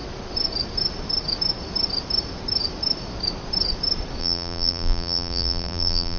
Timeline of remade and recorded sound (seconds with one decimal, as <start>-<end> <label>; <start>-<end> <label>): 0.0-4.2 recorded; 4.2-6.2 remade

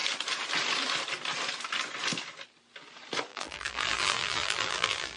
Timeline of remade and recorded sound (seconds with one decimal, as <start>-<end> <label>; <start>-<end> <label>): 0.0-3.3 recorded; 3.3-5.2 remade

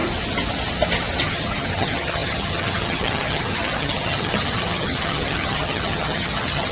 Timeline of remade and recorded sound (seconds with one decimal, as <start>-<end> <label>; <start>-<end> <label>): 0.0-1.2 recorded; 1.2-6.7 remade

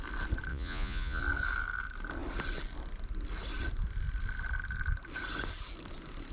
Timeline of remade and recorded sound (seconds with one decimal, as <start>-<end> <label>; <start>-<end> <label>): 0.0-0.5 recorded; 0.5-1.2 remade; 1.2-6.3 recorded